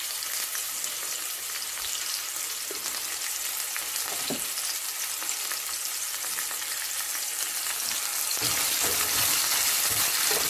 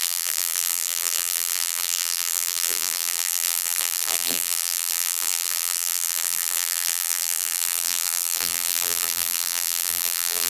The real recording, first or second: first